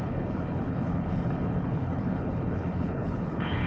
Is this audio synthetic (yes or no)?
yes